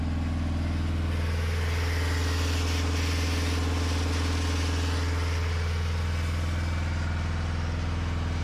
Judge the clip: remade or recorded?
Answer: recorded